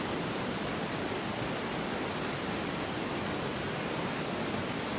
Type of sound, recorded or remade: recorded